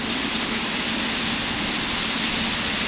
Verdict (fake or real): real